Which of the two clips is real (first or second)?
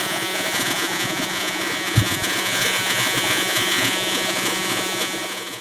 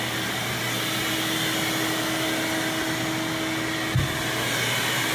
second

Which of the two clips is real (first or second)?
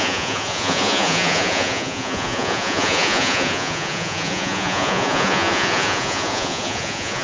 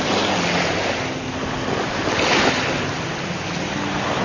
second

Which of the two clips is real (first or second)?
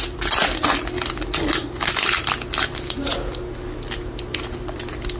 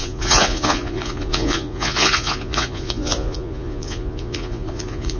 first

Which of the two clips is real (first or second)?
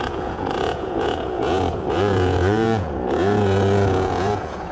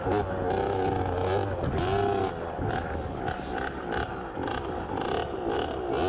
second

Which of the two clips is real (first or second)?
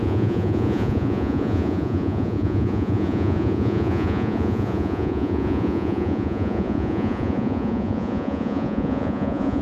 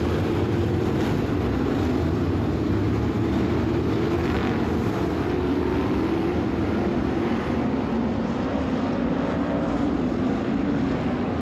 second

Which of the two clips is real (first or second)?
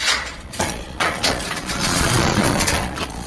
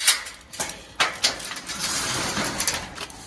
second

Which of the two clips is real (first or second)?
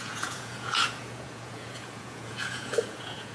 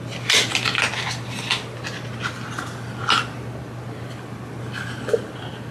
second